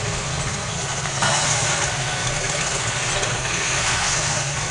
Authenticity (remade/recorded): remade